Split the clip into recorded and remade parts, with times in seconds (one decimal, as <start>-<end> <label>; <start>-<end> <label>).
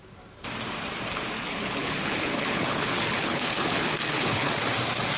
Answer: 0.0-1.4 recorded; 1.4-4.5 remade; 4.5-5.2 recorded